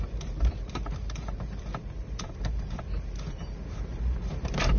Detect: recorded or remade remade